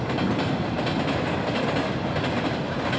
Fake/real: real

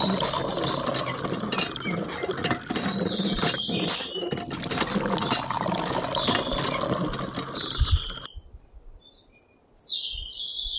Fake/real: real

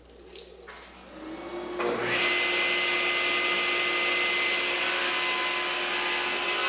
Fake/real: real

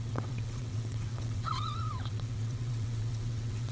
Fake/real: fake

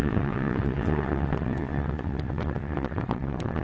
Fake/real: fake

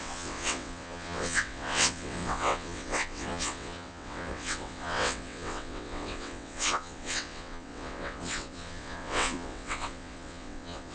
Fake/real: fake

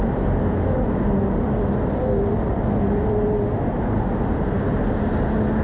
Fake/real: real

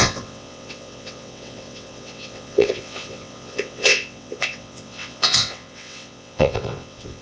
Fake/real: fake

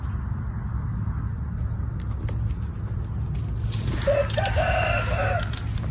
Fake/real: real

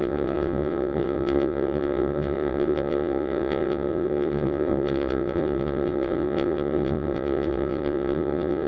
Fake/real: fake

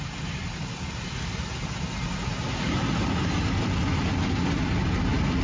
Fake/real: real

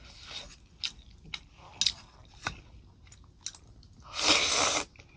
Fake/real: real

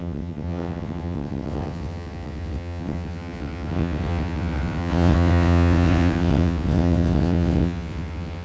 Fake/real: fake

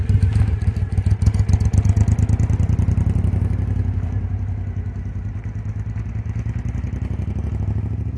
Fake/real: real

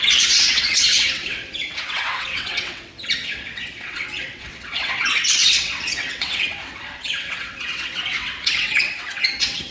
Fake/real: fake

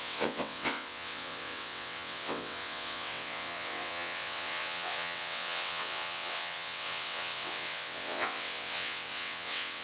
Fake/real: fake